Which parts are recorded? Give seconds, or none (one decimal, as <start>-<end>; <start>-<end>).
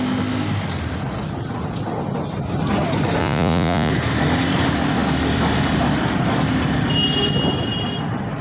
0.0-3.2; 3.9-8.4